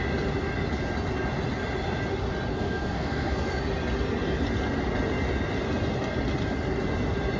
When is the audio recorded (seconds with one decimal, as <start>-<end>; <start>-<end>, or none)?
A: 0.0-2.5; 3.6-7.4